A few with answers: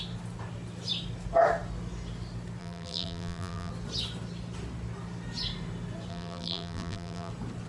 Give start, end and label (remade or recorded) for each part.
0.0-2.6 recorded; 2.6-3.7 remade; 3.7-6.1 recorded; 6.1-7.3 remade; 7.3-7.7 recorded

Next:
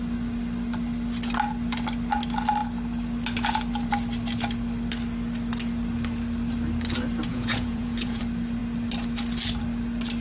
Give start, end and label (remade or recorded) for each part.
0.0-7.3 recorded; 7.3-8.2 remade; 8.2-10.2 recorded

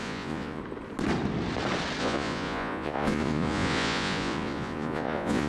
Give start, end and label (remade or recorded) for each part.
0.0-0.6 remade; 0.6-2.0 recorded; 2.0-5.5 remade

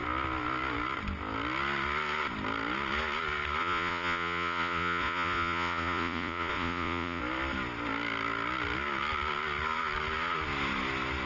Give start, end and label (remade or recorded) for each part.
0.0-3.6 recorded; 3.6-7.2 remade; 7.2-11.3 recorded